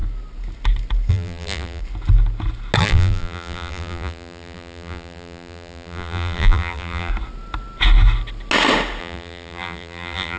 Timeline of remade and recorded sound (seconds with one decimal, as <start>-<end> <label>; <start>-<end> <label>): 0.0-1.1 recorded; 1.1-1.8 remade; 1.8-2.8 recorded; 2.8-7.1 remade; 7.1-9.0 recorded; 9.0-10.4 remade